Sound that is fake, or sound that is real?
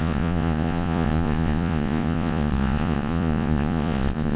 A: fake